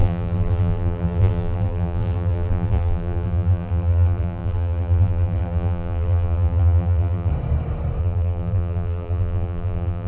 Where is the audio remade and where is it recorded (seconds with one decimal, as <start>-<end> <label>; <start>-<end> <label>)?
0.0-7.3 remade; 7.3-8.0 recorded; 8.0-10.1 remade